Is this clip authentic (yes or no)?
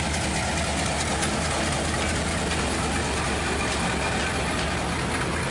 yes